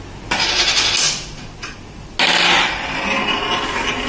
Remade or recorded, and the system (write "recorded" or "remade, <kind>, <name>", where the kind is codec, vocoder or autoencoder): recorded